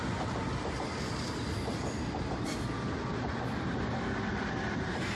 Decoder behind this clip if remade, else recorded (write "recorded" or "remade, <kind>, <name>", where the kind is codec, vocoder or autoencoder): recorded